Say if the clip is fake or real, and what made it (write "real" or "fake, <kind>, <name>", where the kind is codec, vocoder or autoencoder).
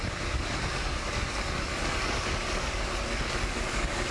fake, codec, DAC